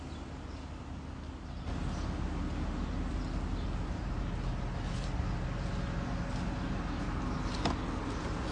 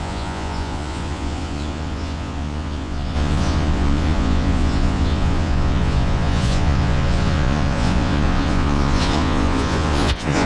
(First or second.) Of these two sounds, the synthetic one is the second